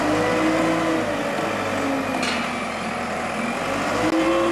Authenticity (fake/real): real